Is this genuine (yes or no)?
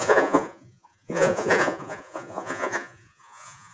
no